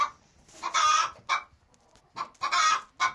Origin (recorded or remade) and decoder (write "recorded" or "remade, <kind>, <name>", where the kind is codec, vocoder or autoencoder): recorded